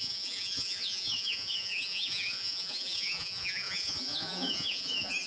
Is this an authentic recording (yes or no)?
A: no